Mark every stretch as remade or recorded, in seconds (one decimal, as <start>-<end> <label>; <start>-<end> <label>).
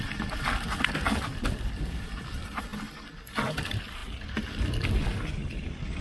0.0-6.0 recorded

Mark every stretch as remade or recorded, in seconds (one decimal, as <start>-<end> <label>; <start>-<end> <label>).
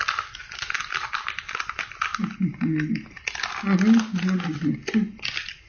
0.0-5.7 recorded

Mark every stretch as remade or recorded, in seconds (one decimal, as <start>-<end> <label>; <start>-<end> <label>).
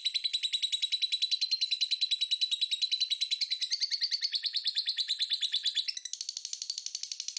0.0-7.4 recorded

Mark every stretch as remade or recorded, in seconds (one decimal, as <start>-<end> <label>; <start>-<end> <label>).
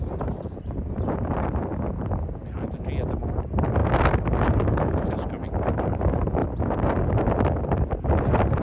0.0-2.4 remade; 2.4-3.3 recorded; 3.3-3.8 remade; 3.8-4.4 recorded; 4.4-6.4 remade; 6.4-8.2 recorded; 8.2-8.6 remade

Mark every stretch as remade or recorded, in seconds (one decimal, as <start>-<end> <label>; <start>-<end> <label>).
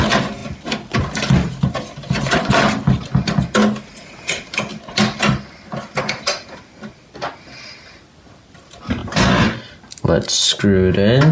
0.0-0.4 recorded; 0.4-2.5 remade; 2.5-11.3 recorded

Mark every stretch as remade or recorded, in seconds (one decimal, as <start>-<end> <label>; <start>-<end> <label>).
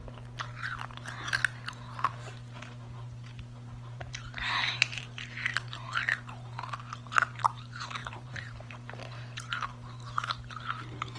0.0-4.0 recorded; 4.0-5.0 remade; 5.0-8.0 recorded; 8.0-8.7 remade; 8.7-11.2 recorded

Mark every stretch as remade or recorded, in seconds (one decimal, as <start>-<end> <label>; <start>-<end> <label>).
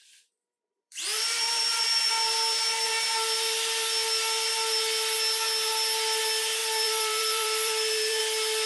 0.0-2.1 remade; 2.1-6.6 recorded; 6.6-8.2 remade; 8.2-8.7 recorded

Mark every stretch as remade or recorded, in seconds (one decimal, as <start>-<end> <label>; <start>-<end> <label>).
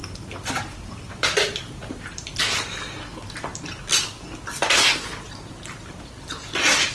0.0-2.4 remade; 2.4-6.9 recorded